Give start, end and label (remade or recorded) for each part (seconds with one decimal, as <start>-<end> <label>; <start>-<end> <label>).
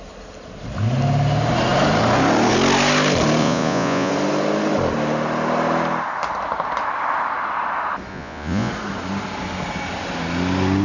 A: 0.0-3.4 recorded; 3.4-4.1 remade; 4.1-8.1 recorded; 8.1-8.7 remade; 8.7-10.8 recorded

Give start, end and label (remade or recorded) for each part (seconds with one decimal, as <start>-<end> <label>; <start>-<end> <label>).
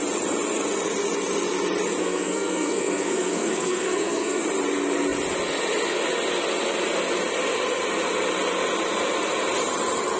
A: 0.0-2.0 recorded; 2.0-4.4 remade; 4.4-10.2 recorded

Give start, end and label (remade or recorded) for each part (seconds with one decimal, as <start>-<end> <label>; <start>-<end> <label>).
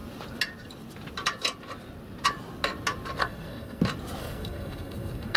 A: 0.0-3.2 recorded; 3.2-3.8 remade; 3.8-4.2 recorded; 4.2-5.4 remade